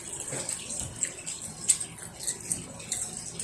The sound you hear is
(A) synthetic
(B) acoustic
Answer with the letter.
B